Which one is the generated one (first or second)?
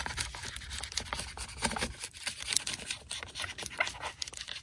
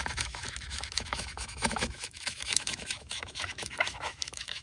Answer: second